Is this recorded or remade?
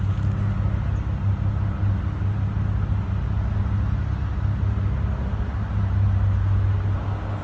recorded